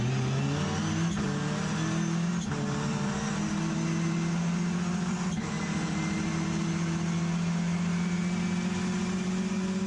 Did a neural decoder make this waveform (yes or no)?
no